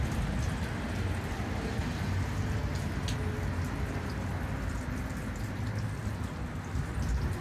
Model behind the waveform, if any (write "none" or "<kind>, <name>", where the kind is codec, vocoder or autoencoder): none